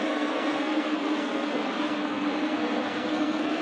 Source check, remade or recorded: remade